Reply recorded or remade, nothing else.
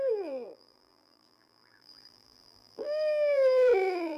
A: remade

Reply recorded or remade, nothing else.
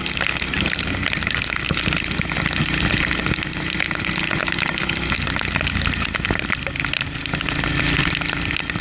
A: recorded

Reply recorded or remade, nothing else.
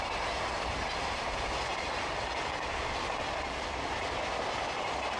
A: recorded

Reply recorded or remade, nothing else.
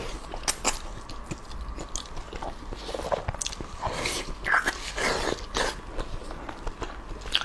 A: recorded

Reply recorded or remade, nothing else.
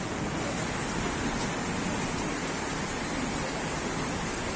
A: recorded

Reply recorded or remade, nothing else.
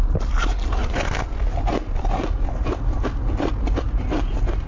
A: recorded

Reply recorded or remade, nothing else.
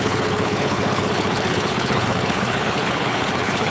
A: remade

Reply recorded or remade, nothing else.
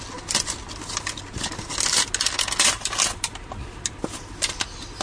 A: recorded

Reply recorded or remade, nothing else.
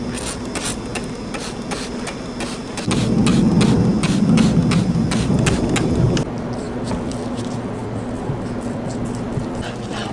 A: recorded